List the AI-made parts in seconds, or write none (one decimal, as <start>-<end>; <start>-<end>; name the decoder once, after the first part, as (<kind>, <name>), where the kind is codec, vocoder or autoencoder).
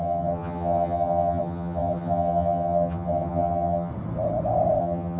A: 0.0-3.9 (vocoder, HiFi-GAN); 4.8-5.2